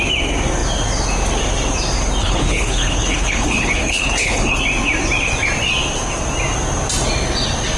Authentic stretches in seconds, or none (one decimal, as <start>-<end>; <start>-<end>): 0.0-2.2; 4.6-7.8

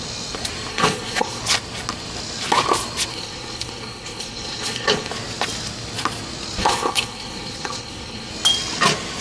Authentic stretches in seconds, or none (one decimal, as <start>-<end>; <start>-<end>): 0.0-0.7; 1.4-3.1; 5.1-6.6; 8.3-9.2

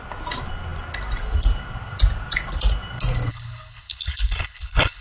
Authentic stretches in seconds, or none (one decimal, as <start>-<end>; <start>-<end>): 0.0-3.3

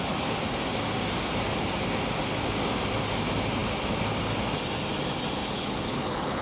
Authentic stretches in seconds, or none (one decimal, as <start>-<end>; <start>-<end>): 0.0-5.4

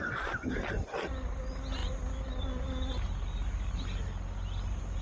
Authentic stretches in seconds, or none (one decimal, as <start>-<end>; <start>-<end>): 0.0-5.0

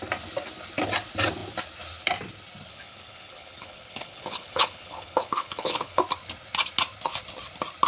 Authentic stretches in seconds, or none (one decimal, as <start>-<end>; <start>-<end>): 0.0-2.7; 6.0-7.9